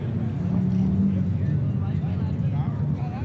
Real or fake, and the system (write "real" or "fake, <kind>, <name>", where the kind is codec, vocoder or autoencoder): real